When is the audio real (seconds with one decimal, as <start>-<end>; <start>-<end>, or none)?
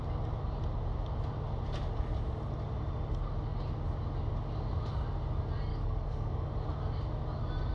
0.0-5.7; 6.5-7.7